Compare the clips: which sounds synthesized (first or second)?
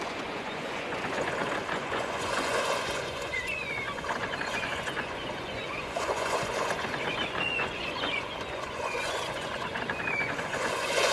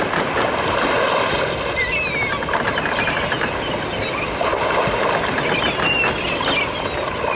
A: first